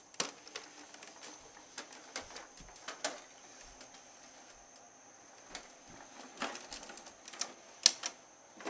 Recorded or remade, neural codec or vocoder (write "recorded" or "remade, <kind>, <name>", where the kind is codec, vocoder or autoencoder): recorded